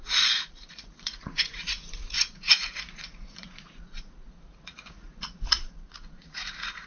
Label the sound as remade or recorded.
remade